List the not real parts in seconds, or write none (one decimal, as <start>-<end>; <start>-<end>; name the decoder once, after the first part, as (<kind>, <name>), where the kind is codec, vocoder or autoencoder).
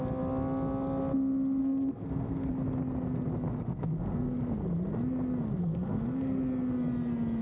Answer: 1.6-2.5 (codec, SNAC); 3.5-4.5; 5.6-6.4